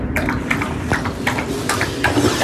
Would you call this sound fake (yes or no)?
no